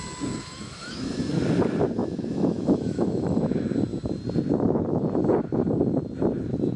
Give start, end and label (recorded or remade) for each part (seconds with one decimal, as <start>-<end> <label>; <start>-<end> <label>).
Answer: 0.0-0.4 recorded; 0.4-1.3 remade; 1.3-2.0 recorded; 2.0-3.4 remade; 3.4-6.8 recorded